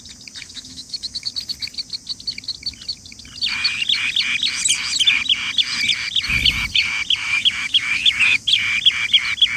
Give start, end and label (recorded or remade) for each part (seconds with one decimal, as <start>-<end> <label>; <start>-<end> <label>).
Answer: 0.0-0.4 recorded; 0.4-1.3 remade; 1.3-7.2 recorded; 7.2-8.5 remade; 8.5-9.6 recorded